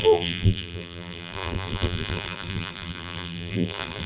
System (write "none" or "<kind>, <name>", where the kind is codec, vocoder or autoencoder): vocoder, BigVGAN v2